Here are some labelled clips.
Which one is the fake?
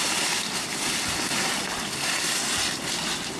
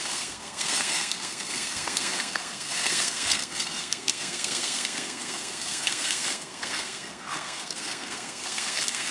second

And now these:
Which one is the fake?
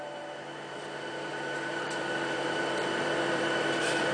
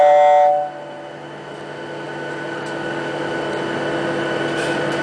first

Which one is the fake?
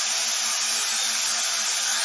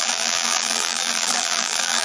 second